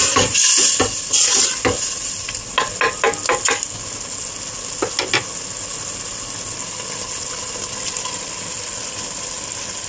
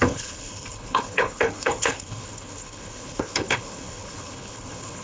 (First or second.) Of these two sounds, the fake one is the second